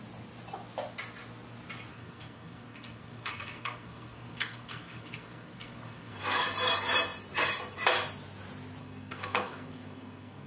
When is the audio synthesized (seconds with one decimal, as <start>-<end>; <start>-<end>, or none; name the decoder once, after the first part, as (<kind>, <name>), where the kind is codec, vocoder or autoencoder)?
1.9-6.5 (codec, SNAC); 8.8-10.5